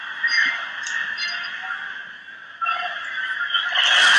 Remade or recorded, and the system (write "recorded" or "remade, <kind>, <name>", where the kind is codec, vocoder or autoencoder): recorded